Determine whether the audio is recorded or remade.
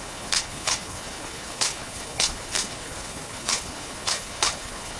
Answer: remade